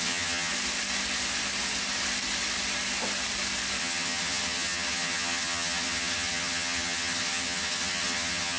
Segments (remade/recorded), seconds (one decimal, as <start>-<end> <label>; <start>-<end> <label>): 0.0-0.5 remade; 0.5-3.8 recorded; 3.8-8.6 remade